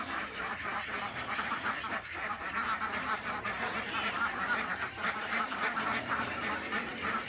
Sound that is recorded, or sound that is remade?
remade